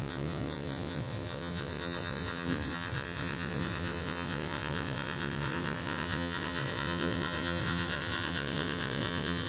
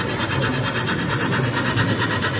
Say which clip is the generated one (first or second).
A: first